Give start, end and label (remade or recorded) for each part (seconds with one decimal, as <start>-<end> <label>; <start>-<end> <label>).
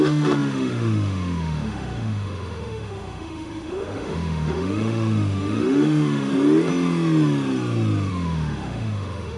0.0-6.3 remade; 6.3-8.1 recorded; 8.1-9.4 remade